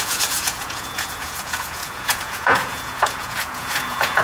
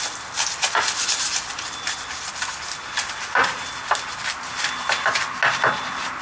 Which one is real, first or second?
second